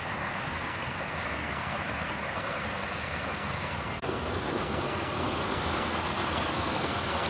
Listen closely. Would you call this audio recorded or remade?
remade